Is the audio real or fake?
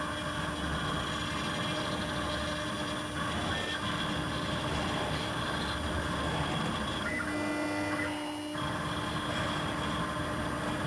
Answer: real